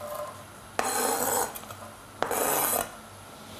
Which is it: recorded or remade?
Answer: recorded